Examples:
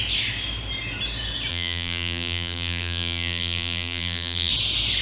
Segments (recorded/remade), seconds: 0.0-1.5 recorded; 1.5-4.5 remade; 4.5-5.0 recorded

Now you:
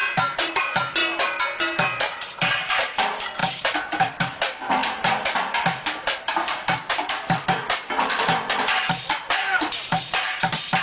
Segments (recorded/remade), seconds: 0.0-1.0 remade; 1.0-2.7 recorded; 2.7-10.8 remade

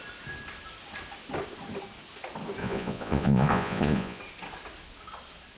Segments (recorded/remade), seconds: 0.0-2.6 recorded; 2.6-4.2 remade; 4.2-5.6 recorded

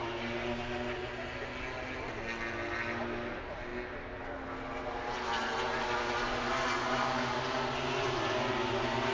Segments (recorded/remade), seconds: 0.0-9.1 recorded

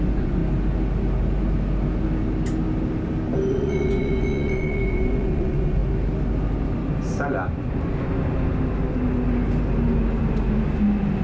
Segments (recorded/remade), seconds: 0.0-0.4 remade; 0.4-3.5 recorded; 3.5-5.8 remade; 5.8-11.2 recorded

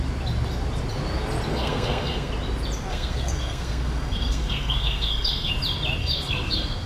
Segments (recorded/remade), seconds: 0.0-1.5 recorded; 1.5-2.3 remade; 2.3-2.9 recorded; 2.9-5.5 remade; 5.5-6.0 recorded; 6.0-6.9 remade